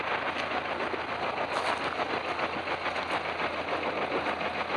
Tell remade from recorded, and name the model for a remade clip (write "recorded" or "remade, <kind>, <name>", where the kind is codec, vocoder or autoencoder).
recorded